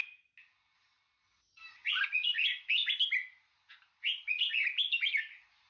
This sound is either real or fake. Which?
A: real